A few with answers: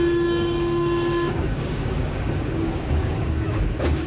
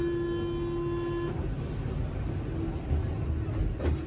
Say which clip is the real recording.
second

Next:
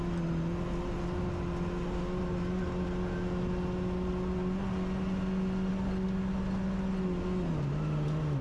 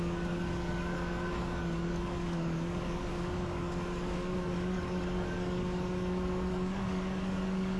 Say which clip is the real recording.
first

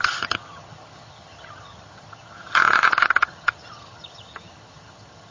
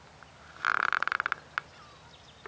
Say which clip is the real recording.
second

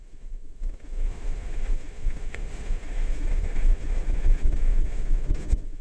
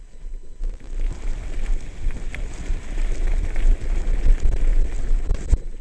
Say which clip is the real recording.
second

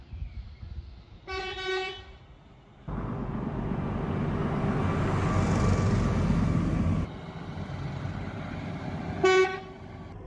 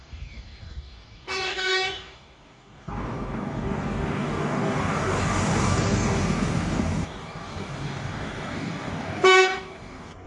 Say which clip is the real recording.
first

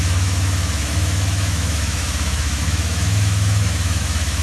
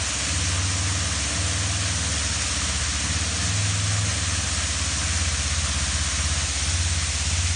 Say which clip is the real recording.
second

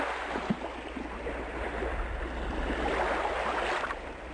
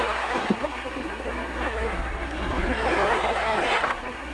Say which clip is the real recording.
first